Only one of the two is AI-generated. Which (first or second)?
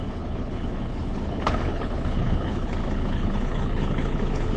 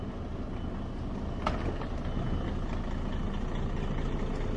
first